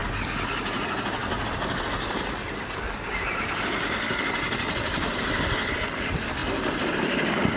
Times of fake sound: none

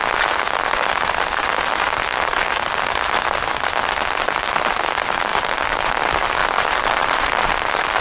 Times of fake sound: 5.3-6.0 (vocoder, BigVGAN v2); 6.4-7.5

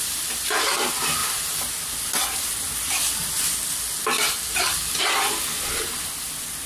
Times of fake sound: none

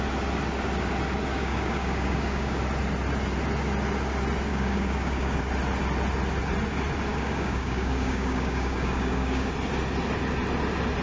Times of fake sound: 1.3-2.6 (codec, DAC); 4.5-5.4; 7.1-9.5

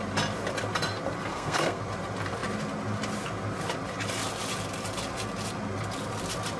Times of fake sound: 1.3-1.8 (codec, SNAC)

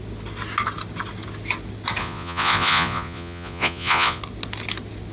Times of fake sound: 2.0-4.2 (vocoder, Vocos)

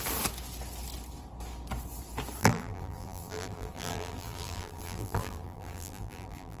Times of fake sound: 2.4-6.6 (vocoder, BigVGAN v2)

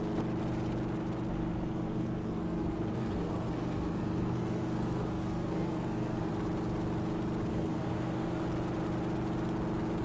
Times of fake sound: 1.3-6.3 (codec, SNAC); 7.5-8.4